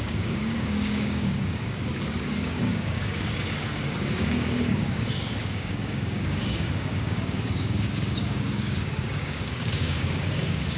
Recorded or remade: remade